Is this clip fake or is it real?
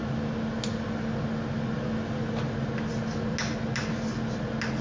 real